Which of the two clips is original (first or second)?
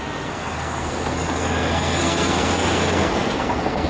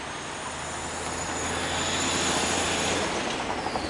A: second